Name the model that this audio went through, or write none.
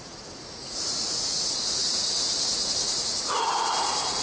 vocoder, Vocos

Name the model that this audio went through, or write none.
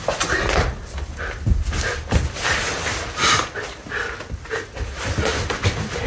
none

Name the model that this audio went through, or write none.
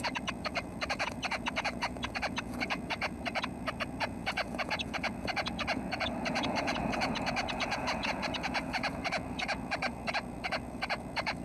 vocoder, Vocos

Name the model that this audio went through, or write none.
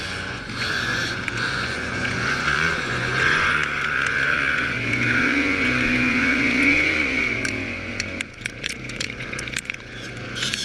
vocoder, Vocos